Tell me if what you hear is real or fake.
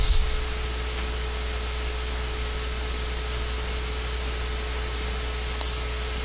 real